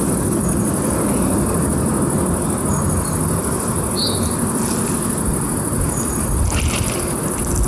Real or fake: real